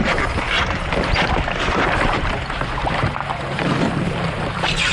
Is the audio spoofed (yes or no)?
yes